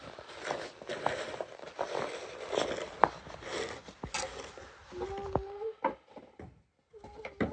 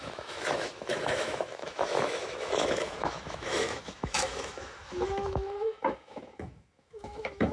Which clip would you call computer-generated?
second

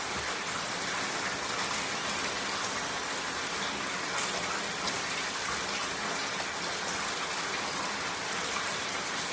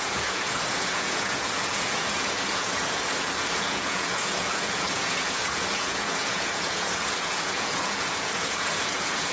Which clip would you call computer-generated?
second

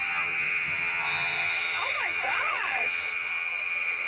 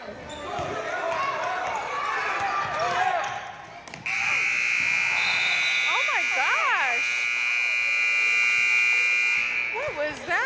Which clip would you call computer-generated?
first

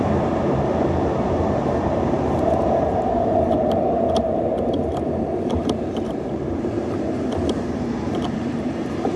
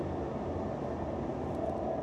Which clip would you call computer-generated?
first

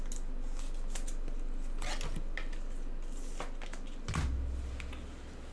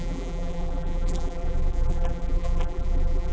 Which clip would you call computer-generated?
second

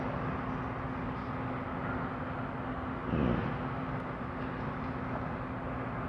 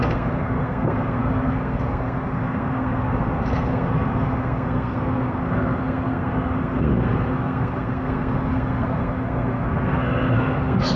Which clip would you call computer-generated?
second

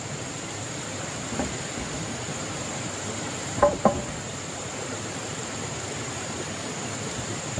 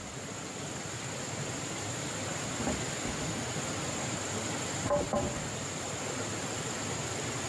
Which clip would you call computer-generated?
first